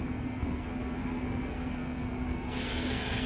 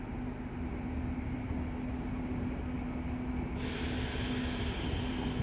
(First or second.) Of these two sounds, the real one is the second